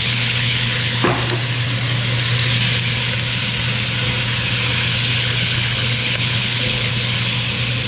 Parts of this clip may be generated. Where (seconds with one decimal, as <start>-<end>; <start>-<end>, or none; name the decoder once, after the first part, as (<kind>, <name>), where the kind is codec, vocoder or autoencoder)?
0.0-1.1 (codec, HILCodec); 5.2-6.9